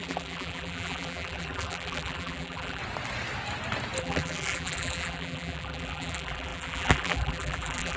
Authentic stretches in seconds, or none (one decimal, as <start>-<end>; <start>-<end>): 2.8-4.0